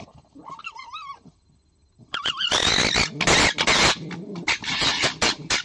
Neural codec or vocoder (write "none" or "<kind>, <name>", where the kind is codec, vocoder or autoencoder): none